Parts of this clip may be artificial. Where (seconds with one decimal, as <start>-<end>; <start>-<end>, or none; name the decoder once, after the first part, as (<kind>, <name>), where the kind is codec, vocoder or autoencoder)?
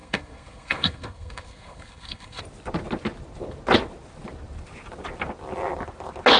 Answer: 0.0-2.4 (codec, SNAC)